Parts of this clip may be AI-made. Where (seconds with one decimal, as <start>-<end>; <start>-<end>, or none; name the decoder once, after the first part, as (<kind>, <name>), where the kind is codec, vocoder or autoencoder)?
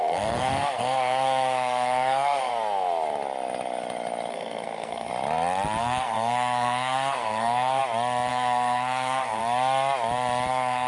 0.0-2.5 (codec, SNAC); 4.3-5.1; 5.8-7.8; 8.3-9.4; 10.5-10.9